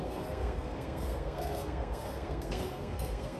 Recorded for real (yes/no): no